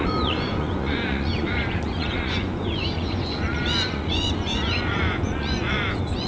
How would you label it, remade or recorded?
remade